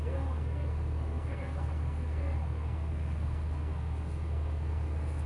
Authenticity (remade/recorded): remade